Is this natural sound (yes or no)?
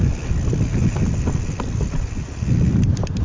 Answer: yes